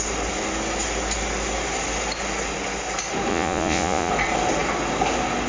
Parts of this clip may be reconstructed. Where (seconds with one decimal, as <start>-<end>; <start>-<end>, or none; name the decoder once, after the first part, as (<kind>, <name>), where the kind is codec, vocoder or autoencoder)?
3.3-4.1 (vocoder, Vocos)